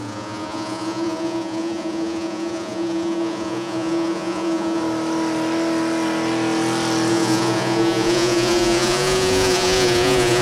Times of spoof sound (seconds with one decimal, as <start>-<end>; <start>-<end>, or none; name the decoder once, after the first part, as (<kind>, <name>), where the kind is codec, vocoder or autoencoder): 0.0-4.8 (vocoder, Vocos); 7.1-10.4